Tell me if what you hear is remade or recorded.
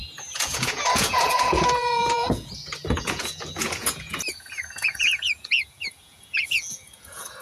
remade